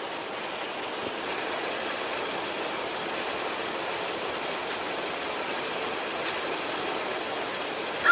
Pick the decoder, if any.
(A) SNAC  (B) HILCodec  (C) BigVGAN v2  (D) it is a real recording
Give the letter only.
D